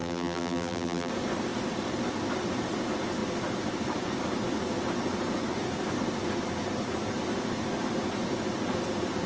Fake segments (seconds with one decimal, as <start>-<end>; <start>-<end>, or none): 0.0-1.1